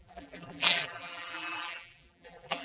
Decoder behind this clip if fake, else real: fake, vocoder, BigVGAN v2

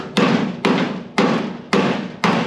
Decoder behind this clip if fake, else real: real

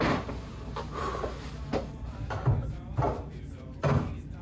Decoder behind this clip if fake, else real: real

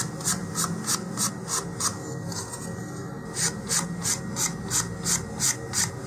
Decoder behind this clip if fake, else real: real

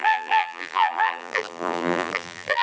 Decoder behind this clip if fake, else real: fake, vocoder, BigVGAN v2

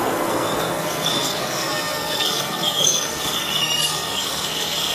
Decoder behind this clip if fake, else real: fake, codec, SNAC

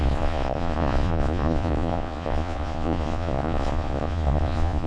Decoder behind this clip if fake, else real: fake, vocoder, Vocos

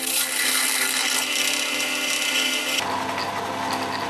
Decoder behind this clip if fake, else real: real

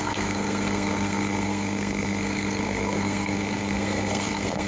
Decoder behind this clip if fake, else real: fake, codec, SNAC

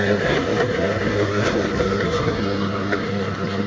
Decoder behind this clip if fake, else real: fake, codec, SNAC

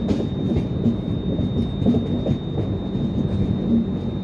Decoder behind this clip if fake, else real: real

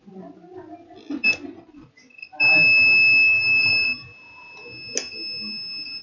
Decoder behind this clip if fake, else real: real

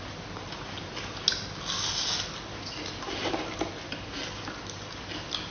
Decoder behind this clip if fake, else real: real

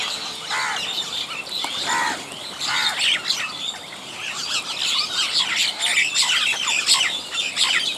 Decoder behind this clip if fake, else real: real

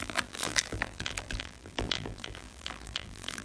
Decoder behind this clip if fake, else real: fake, vocoder, BigVGAN v2